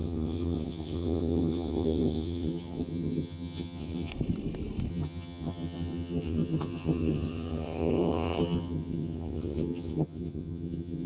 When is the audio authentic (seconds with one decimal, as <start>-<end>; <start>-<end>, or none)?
4.1-4.9